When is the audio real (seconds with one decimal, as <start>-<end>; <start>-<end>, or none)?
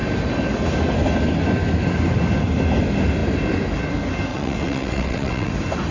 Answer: 0.0-4.3; 5.5-5.9